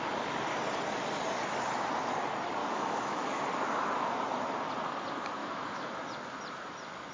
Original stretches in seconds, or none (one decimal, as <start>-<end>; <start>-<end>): 0.0-2.6; 3.4-5.4; 5.9-7.1